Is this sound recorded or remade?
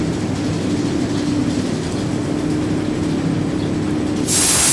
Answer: recorded